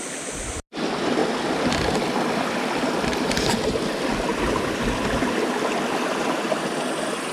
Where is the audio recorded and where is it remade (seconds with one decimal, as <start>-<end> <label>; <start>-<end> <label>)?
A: 0.0-7.3 recorded